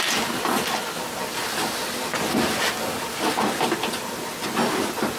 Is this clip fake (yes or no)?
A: no